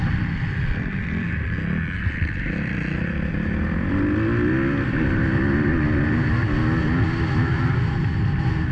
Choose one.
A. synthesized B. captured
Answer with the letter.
B